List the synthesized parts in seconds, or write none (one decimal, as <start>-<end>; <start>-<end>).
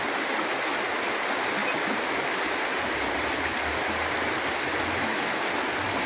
none